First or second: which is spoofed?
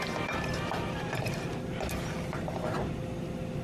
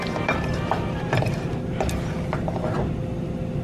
first